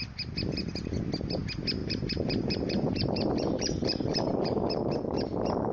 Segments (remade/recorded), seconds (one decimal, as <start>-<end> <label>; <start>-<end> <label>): 0.0-1.8 recorded; 1.8-4.8 remade; 4.8-5.7 recorded